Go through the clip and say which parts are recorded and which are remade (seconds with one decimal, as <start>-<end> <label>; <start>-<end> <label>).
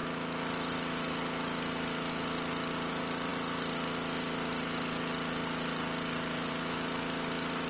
0.0-7.7 recorded